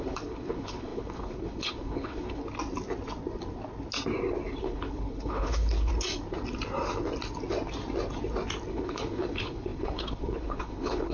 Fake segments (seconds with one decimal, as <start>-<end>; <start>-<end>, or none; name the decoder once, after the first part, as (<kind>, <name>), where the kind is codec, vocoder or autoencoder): 0.0-2.4 (codec, HILCodec); 4.6-5.9; 8.7-11.1